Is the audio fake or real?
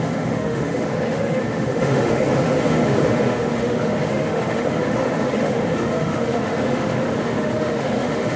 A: fake